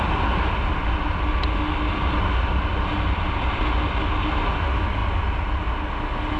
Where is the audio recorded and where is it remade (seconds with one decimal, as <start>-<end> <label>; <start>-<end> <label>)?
0.0-6.4 recorded